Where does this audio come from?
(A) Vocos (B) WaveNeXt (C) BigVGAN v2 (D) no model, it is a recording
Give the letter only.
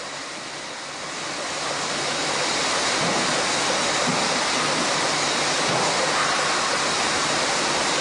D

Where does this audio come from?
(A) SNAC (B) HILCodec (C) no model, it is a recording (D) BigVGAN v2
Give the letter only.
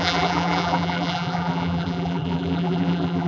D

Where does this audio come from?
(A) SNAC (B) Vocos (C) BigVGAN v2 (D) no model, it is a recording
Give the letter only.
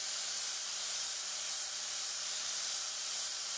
C